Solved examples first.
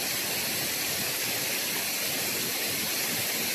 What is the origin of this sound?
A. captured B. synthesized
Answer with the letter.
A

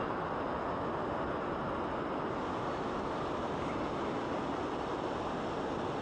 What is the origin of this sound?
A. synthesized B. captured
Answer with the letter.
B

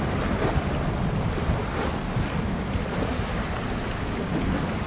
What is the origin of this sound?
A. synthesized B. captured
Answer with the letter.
B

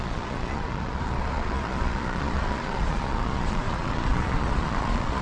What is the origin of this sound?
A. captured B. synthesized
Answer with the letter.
B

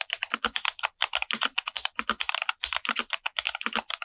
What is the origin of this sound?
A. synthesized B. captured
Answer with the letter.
B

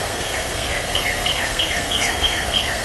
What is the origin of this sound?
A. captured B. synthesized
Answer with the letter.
B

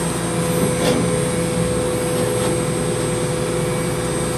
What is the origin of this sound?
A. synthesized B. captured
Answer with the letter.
B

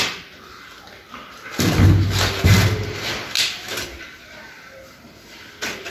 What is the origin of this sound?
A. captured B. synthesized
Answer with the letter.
A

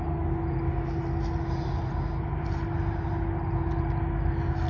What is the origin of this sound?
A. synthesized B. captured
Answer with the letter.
B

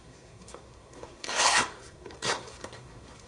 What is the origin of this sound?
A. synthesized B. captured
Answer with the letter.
A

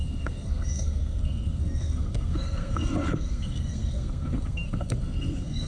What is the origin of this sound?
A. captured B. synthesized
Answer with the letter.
B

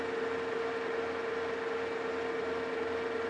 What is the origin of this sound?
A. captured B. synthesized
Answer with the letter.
A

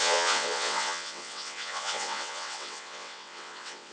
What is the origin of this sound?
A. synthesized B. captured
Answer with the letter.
A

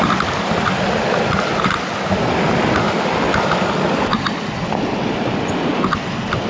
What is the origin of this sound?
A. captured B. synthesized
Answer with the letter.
A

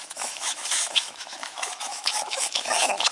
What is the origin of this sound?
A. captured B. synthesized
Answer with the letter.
B